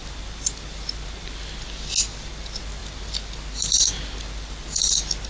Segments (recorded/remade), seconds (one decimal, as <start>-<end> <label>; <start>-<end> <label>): 0.0-5.3 recorded